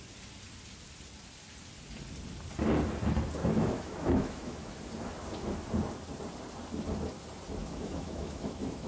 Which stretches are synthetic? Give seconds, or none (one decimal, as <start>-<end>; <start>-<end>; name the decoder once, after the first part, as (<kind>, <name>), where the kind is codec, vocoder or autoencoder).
3.4-4.7 (autoencoder, DAC-VAE); 7.6-8.9